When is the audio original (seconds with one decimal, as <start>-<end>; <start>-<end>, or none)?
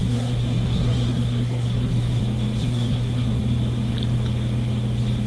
2.2-2.6; 3.4-5.3